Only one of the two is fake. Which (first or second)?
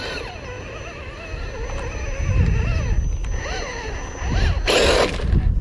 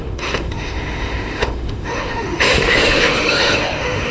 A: second